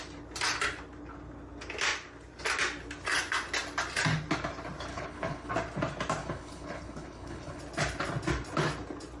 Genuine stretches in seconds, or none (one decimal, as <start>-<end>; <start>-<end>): 0.0-4.9; 5.5-6.2; 7.6-9.2